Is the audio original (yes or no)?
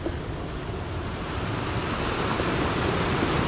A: yes